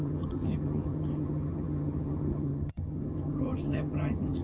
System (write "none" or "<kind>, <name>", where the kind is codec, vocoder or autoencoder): vocoder, HiFi-GAN